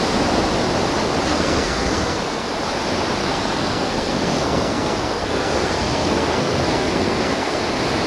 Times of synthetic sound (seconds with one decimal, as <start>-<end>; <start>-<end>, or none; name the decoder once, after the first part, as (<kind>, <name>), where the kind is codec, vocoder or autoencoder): 1.3-2.5 (codec, SNAC); 3.2-7.6